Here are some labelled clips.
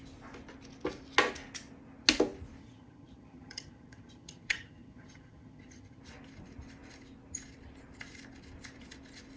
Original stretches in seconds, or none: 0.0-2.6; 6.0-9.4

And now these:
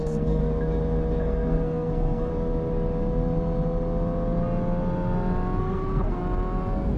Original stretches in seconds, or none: 0.4-1.2; 2.3-5.6; 6.2-7.0

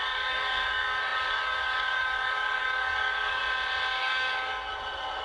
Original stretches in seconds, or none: 3.4-4.0; 4.5-5.2

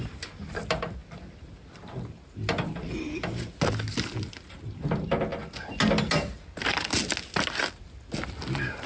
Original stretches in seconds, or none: 0.0-8.9